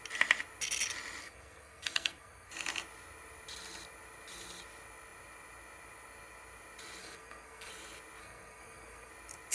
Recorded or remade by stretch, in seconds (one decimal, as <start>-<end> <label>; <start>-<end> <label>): 0.0-1.2 recorded; 1.2-2.5 remade; 2.5-7.0 recorded; 7.0-7.7 remade; 7.7-8.2 recorded; 8.2-9.1 remade; 9.1-9.5 recorded